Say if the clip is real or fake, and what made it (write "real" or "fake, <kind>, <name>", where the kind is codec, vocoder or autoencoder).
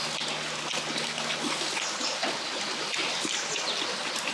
real